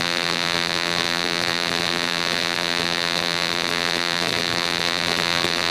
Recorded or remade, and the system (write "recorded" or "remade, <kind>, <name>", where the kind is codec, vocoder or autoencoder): remade, vocoder, BigVGAN v2